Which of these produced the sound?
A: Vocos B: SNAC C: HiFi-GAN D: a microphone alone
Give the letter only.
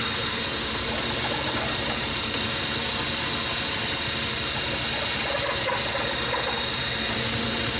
D